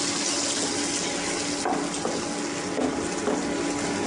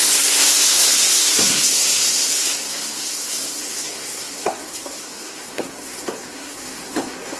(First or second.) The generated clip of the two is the second